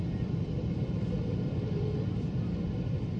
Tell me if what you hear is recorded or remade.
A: remade